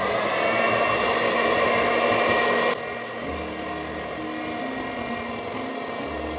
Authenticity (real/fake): real